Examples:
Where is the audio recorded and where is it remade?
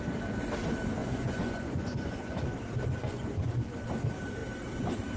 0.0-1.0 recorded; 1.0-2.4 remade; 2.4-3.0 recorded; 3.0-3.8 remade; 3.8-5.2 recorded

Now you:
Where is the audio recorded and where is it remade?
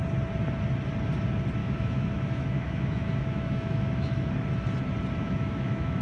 0.0-1.6 recorded; 1.6-4.3 remade; 4.3-5.2 recorded; 5.2-6.0 remade